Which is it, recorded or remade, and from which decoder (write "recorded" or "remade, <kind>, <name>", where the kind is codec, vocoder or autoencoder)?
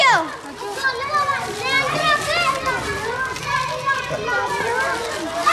recorded